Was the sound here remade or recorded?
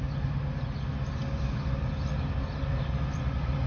recorded